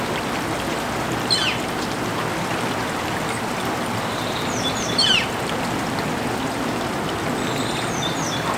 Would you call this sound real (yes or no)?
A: yes